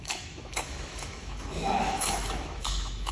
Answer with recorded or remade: remade